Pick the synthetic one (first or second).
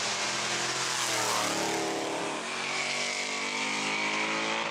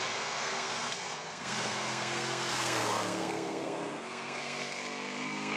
second